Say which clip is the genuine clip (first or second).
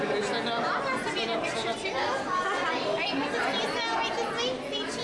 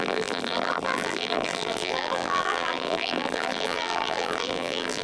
first